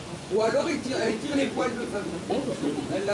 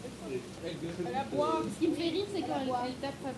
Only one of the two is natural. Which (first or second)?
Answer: second